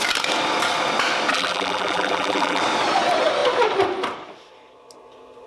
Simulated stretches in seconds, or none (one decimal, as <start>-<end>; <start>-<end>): 1.3-2.6